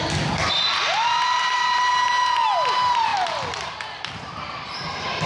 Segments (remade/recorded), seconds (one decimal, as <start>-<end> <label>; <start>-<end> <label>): 0.0-1.9 remade; 1.9-2.5 recorded; 2.5-5.3 remade